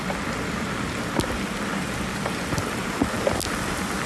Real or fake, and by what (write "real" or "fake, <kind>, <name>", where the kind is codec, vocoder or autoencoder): real